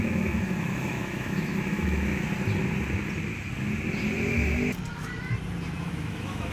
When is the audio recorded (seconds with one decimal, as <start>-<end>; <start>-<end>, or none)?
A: 2.1-5.8